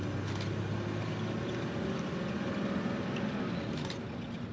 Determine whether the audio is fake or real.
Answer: real